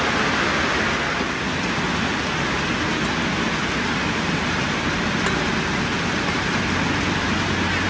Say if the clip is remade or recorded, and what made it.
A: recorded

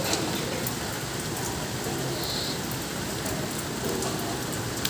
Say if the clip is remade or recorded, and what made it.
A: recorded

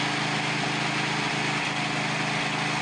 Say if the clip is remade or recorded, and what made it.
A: recorded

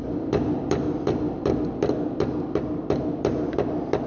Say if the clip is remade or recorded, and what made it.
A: recorded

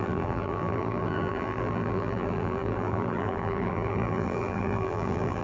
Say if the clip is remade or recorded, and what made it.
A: remade, vocoder, BigVGAN v2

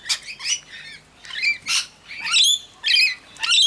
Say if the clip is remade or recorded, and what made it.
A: recorded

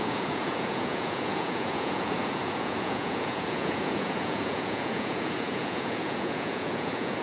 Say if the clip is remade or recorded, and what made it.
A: remade, vocoder, Vocos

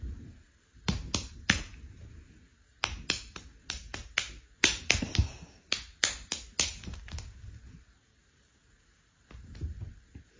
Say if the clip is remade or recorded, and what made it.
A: recorded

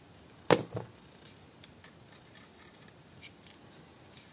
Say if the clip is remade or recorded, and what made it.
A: recorded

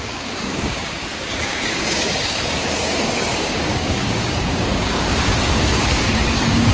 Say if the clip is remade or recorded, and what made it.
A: remade, codec, DAC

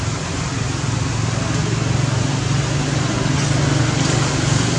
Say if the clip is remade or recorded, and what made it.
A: recorded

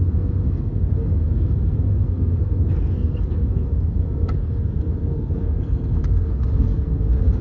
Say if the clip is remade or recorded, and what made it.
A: remade, codec, SNAC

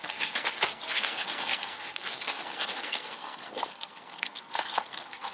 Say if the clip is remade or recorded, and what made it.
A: remade, codec, SNAC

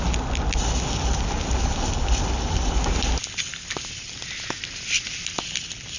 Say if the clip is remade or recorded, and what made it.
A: recorded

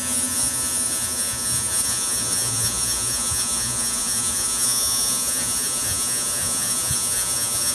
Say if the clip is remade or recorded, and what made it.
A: remade, vocoder, Vocos